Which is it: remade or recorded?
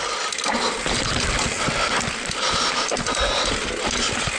recorded